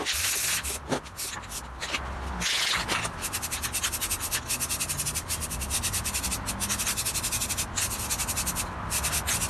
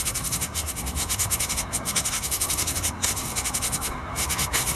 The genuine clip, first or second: first